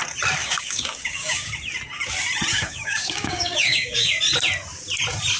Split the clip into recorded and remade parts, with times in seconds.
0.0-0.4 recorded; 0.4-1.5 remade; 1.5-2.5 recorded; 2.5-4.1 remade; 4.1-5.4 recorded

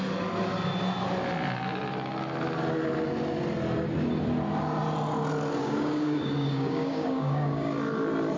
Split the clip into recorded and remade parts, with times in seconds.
0.0-5.6 recorded; 5.6-7.7 remade; 7.7-8.4 recorded

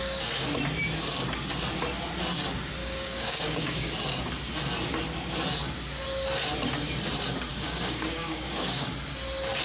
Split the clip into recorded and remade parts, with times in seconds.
0.0-2.8 recorded; 2.8-3.9 remade; 3.9-7.5 recorded; 7.5-8.9 remade; 8.9-9.6 recorded

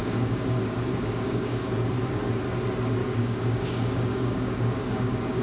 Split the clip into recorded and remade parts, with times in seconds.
0.0-1.7 remade; 1.7-3.0 recorded; 3.0-5.4 remade

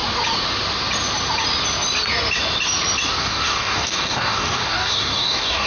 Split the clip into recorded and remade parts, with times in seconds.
0.0-3.2 recorded; 3.2-5.7 remade

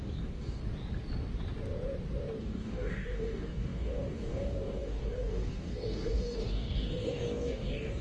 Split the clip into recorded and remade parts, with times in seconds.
0.0-0.6 remade; 0.6-2.4 recorded; 2.4-8.0 remade

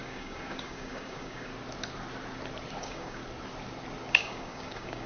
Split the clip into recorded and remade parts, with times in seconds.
0.0-1.5 remade; 1.5-2.8 recorded; 2.8-3.2 remade; 3.2-4.1 recorded; 4.1-5.1 remade